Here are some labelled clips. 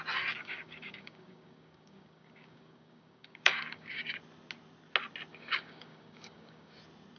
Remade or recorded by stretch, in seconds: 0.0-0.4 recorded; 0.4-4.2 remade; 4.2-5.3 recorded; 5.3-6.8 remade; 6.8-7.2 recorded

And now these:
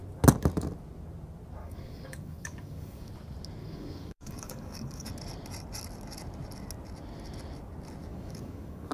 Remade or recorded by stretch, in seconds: 0.0-1.6 recorded; 1.6-3.1 remade; 3.1-3.6 recorded; 3.6-5.1 remade; 5.1-8.1 recorded; 8.1-8.9 remade

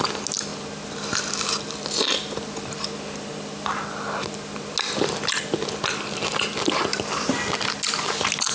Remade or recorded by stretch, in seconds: 0.0-8.5 recorded

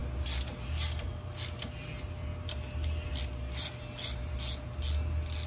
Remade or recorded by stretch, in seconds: 0.0-5.5 recorded